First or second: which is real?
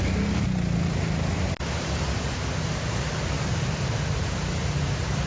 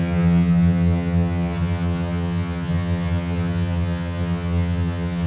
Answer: first